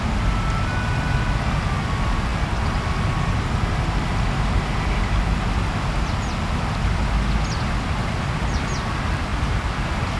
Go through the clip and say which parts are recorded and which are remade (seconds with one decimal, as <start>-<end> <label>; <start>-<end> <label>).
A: 0.0-8.0 recorded; 8.0-8.7 remade; 8.7-9.3 recorded; 9.3-10.2 remade